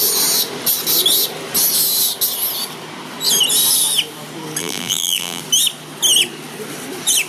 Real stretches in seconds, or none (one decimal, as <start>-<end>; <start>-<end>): 0.0-4.6; 5.4-7.3